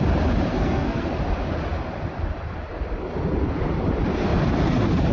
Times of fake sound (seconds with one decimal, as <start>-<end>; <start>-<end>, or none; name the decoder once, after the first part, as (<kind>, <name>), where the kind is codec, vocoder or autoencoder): 0.5-1.2 (codec, SNAC)